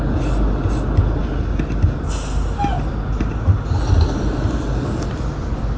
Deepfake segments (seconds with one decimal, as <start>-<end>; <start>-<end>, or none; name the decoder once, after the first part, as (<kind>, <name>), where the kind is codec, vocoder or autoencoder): none

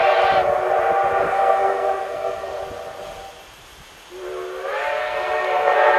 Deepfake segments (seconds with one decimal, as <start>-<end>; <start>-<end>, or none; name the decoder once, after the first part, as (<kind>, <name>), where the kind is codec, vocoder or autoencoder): 1.2-2.6 (codec, SNAC); 5.0-6.0

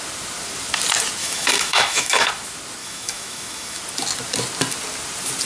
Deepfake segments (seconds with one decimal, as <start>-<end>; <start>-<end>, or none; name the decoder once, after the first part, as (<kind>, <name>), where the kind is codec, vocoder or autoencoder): 1.2-2.3 (autoencoder, DAC-VAE); 2.8-3.8

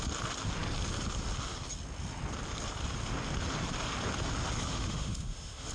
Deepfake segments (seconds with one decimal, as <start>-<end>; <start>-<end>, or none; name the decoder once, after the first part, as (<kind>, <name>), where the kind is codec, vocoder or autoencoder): 4.7-5.7 (autoencoder, DAC-VAE)

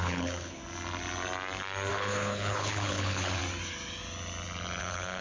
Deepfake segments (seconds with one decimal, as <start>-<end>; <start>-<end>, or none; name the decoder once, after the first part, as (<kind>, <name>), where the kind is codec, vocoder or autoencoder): 0.0-0.6 (codec, HILCodec); 1.9-3.4; 4.8-5.2

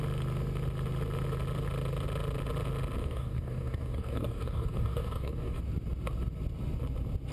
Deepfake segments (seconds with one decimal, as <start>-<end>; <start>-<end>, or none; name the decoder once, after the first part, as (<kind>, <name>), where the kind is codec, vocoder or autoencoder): 3.0-5.6 (codec, DAC)